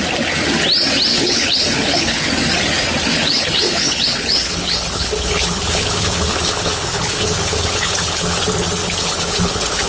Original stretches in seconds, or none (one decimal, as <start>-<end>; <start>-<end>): 0.0-1.1; 2.3-3.1; 8.4-8.8

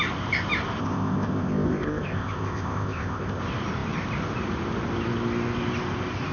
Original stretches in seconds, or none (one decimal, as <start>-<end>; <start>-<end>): 0.0-0.8; 3.4-6.3